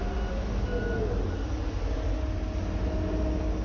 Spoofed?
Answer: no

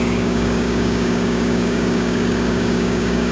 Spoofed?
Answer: yes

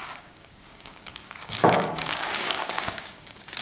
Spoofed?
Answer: yes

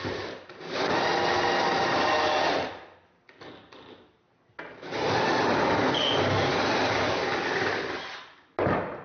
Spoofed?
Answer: no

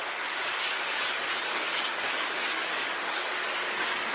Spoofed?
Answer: yes